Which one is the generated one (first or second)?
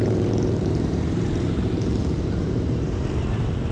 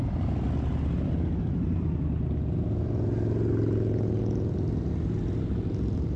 first